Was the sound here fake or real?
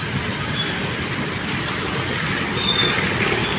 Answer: real